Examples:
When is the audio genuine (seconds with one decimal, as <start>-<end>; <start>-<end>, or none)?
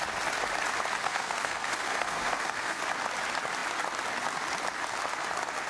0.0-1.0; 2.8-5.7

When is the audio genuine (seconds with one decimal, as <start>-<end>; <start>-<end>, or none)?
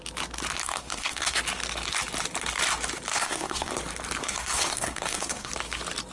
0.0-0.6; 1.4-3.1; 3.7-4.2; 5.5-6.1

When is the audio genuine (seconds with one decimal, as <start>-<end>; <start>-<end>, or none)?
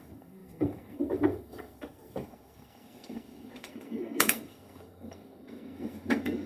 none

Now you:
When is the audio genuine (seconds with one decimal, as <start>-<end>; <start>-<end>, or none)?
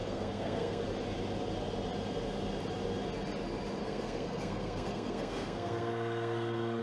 0.8-3.8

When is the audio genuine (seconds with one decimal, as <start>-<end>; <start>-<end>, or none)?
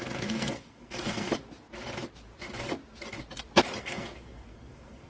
1.3-3.8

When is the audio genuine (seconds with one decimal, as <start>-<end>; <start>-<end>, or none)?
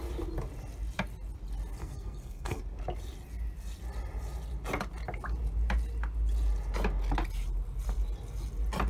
0.0-1.8; 2.6-8.9